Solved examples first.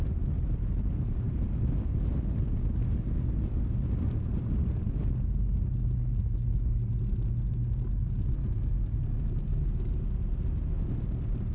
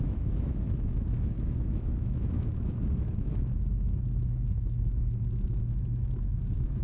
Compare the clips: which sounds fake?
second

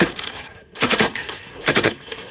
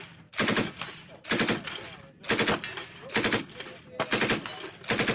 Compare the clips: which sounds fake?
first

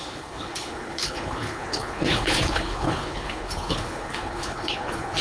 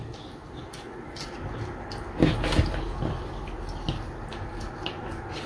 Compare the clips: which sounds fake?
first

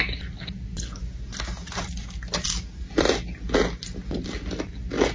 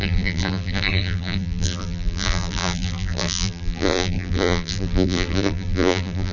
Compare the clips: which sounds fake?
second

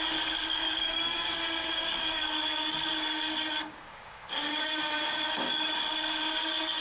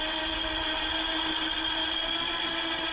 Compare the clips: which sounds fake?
first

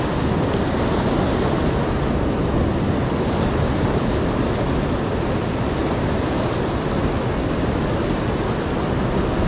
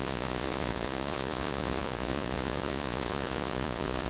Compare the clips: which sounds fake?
second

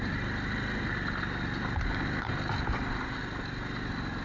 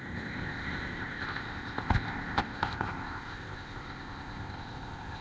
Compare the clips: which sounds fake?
second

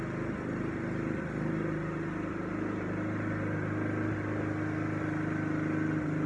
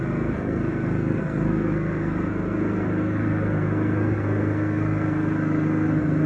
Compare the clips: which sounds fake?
second